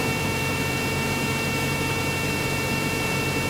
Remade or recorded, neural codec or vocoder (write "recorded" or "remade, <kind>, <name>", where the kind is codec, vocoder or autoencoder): remade, vocoder, BigVGAN v2